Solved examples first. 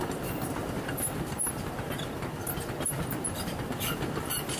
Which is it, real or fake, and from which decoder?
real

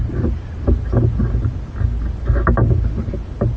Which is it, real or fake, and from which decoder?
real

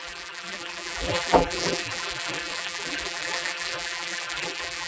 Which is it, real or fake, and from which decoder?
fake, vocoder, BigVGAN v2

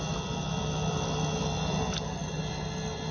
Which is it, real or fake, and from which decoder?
fake, vocoder, BigVGAN v2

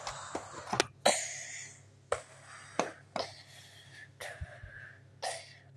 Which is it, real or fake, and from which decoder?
real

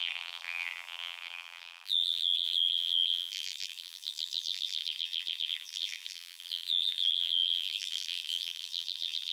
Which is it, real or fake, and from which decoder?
fake, vocoder, BigVGAN v2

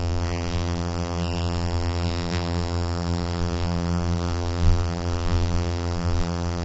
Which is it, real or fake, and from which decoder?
fake, vocoder, BigVGAN v2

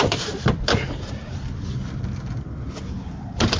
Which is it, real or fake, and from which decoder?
fake, vocoder, BigVGAN v2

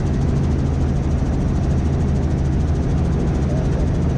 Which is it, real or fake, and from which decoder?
real